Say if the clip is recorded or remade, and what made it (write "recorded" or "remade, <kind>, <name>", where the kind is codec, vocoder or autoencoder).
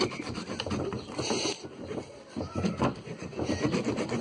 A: recorded